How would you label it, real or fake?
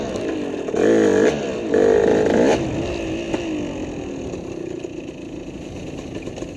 real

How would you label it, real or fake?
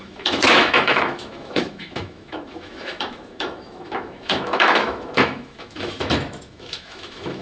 fake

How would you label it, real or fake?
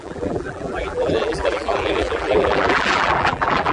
fake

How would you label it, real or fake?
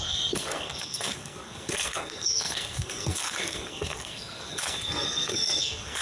fake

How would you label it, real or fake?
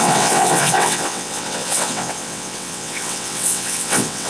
fake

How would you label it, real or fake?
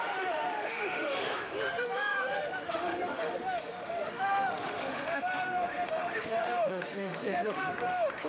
fake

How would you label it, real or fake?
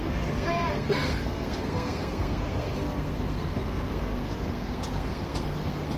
fake